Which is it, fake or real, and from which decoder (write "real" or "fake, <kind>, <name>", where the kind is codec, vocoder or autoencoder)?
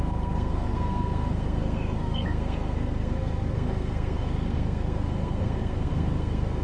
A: fake, codec, SNAC